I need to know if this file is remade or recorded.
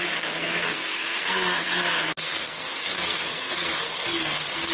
remade